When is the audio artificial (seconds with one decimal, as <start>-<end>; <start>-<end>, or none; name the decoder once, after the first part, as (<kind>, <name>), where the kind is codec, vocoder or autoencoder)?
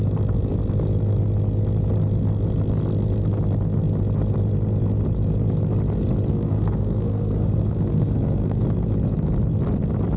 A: 6.3-8.6 (codec, SNAC)